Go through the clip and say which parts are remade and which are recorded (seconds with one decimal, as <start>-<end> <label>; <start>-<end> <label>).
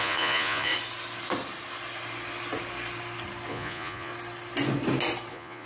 0.0-0.7 remade; 0.7-3.5 recorded; 3.5-4.1 remade; 4.1-5.3 recorded; 5.3-5.7 remade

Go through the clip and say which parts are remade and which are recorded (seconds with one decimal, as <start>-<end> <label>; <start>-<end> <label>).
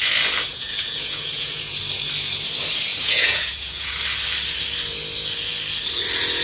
0.0-0.5 recorded; 0.5-1.8 remade; 1.8-2.9 recorded; 2.9-3.9 remade; 3.9-6.4 recorded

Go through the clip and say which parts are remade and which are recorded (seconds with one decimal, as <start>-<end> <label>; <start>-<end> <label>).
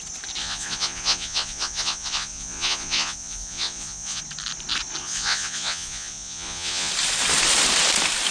0.0-0.4 recorded; 0.4-4.2 remade; 4.2-5.0 recorded; 5.0-6.9 remade; 6.9-8.3 recorded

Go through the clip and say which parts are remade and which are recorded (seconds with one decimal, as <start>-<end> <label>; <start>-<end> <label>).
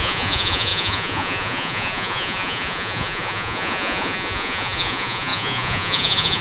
0.0-6.4 remade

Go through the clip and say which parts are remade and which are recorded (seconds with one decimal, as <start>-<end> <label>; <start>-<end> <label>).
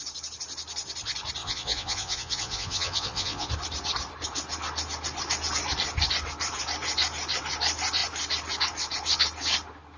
0.0-1.4 recorded; 1.4-3.5 remade; 3.5-10.0 recorded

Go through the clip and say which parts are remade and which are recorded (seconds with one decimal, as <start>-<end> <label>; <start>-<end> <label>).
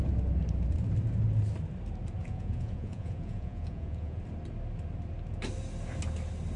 0.0-2.2 recorded; 2.2-4.2 remade; 4.2-6.6 recorded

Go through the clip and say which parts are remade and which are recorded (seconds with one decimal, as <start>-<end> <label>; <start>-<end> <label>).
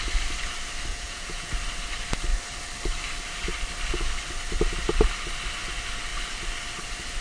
0.0-0.9 recorded; 0.9-1.5 remade; 1.5-7.2 recorded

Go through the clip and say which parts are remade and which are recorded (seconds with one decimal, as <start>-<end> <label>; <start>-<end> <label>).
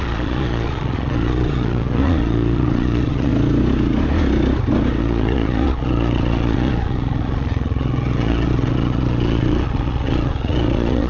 0.0-3.3 remade; 3.3-5.0 recorded; 5.0-11.1 remade